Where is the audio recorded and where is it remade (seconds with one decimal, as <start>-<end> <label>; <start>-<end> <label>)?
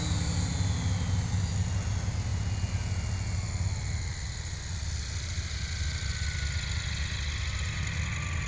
0.0-8.5 recorded